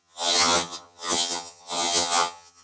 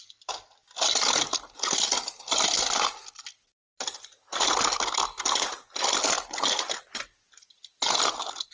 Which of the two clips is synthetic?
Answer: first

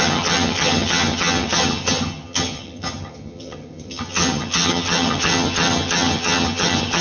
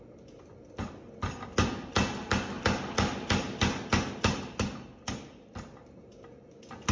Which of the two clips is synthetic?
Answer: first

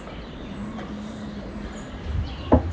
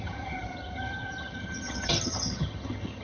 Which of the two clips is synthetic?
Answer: second